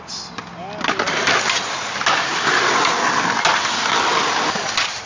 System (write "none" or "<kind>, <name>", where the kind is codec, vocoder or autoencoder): none